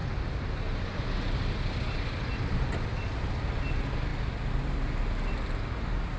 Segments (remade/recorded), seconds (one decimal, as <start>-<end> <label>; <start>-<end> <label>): 0.0-6.2 recorded